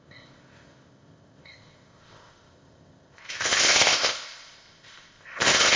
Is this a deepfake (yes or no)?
yes